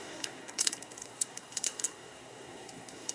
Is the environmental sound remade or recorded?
remade